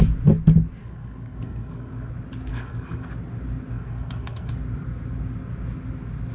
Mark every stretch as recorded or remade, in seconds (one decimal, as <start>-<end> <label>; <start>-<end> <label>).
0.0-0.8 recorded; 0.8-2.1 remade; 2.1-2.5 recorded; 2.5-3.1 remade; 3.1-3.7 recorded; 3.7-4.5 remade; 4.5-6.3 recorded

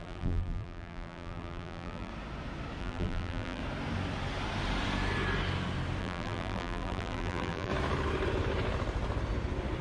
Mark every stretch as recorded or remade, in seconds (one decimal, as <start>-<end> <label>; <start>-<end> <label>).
0.0-2.1 remade; 2.1-2.8 recorded; 2.8-3.6 remade; 3.6-6.0 recorded; 6.0-7.7 remade; 7.7-9.8 recorded

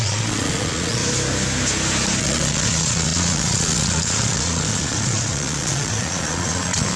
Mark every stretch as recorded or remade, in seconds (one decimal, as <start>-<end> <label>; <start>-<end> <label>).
0.0-1.0 remade; 1.0-2.2 recorded; 2.2-7.0 remade